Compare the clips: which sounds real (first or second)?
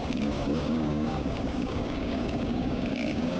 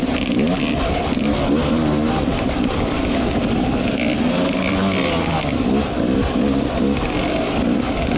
second